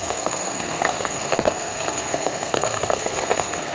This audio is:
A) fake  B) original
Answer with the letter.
A